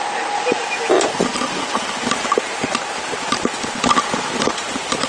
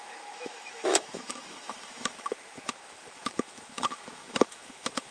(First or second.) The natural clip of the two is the first